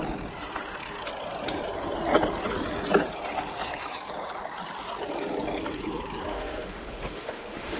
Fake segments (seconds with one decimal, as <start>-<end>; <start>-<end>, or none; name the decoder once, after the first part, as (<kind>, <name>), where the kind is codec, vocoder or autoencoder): 6.3-7.8 (autoencoder, DAC-VAE)